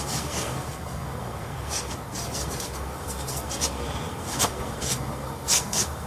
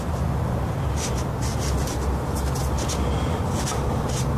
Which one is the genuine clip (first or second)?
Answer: second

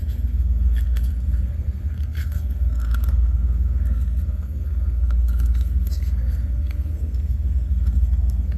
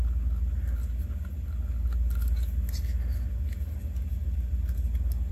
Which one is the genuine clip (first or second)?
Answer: second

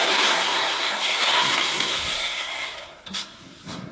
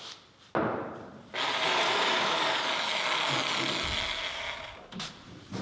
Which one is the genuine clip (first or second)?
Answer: second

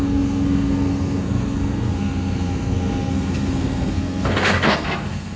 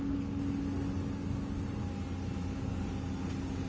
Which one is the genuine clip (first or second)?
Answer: second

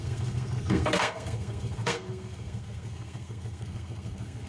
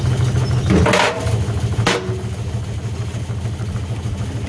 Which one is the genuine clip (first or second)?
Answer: second